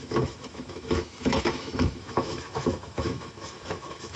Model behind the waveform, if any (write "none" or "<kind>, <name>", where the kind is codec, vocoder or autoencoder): autoencoder, DAC-VAE